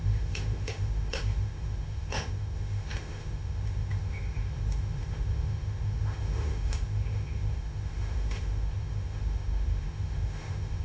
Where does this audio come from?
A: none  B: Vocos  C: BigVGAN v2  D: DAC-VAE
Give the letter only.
D